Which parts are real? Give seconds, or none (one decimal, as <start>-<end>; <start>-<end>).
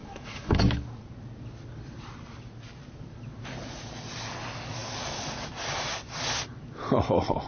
0.6-7.5